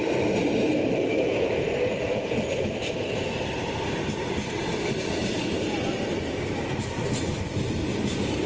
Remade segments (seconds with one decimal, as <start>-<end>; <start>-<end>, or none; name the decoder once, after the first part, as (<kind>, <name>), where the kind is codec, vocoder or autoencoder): 1.1-1.6 (autoencoder, DAC-VAE)